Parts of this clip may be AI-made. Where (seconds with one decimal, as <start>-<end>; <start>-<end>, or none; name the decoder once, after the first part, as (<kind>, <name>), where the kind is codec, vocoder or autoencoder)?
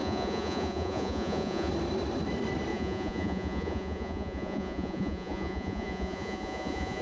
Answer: 0.0-1.7 (vocoder, Vocos); 2.7-7.0